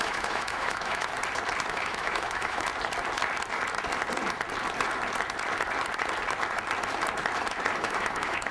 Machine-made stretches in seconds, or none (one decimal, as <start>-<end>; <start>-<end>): 0.0-1.1; 1.7-2.7; 7.8-8.5